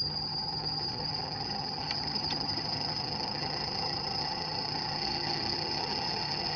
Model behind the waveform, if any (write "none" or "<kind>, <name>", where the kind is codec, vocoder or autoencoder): vocoder, HiFi-GAN